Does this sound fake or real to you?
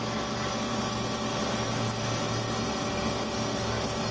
real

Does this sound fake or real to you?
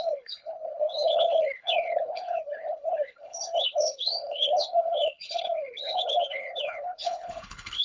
fake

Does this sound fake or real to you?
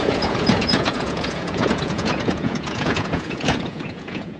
fake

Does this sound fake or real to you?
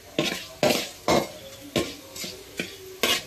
real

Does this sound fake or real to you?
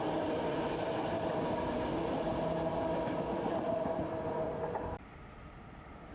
fake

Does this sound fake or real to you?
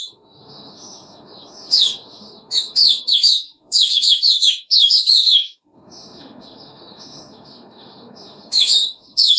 fake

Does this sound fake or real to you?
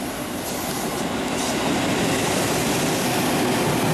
real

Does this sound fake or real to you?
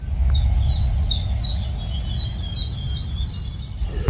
real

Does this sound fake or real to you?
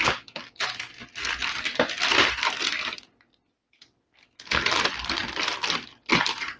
real